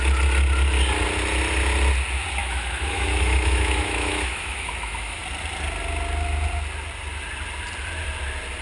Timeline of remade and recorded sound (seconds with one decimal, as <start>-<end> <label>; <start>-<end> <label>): 0.0-2.4 recorded; 2.4-5.2 remade; 5.2-8.6 recorded